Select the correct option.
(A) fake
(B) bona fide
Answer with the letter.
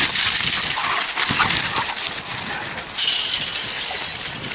B